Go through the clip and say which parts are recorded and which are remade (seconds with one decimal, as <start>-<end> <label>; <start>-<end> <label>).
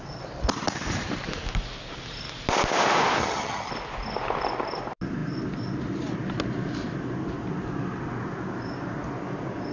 0.0-3.2 recorded; 3.2-3.7 remade; 3.7-9.7 recorded